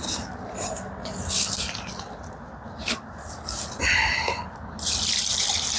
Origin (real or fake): real